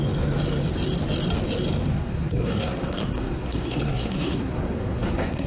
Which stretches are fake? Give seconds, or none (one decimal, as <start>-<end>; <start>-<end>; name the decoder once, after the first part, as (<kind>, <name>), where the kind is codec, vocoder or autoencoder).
1.9-5.5 (codec, SNAC)